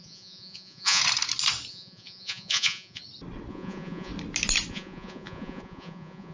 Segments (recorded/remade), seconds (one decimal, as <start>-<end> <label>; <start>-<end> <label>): 0.0-1.0 remade; 1.0-1.7 recorded; 1.7-3.0 remade; 3.0-3.5 recorded; 3.5-4.1 remade; 4.1-4.7 recorded; 4.7-6.3 remade